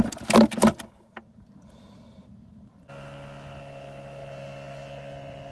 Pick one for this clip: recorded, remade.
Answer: recorded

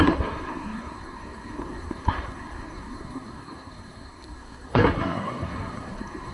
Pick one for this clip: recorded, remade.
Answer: remade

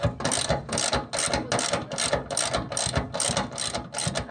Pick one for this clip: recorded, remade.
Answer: recorded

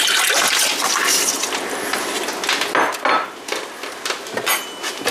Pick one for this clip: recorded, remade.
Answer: recorded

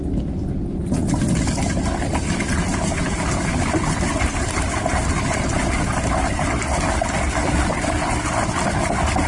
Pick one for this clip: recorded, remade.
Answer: recorded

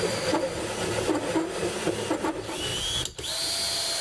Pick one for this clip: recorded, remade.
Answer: recorded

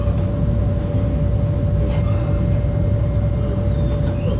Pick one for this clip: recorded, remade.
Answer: recorded